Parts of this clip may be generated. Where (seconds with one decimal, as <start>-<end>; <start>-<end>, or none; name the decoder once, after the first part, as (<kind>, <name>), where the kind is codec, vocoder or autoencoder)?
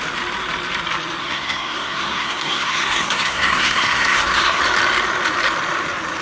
1.2-4.6 (codec, SNAC)